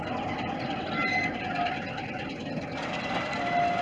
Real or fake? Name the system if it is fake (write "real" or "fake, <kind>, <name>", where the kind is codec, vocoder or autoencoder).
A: real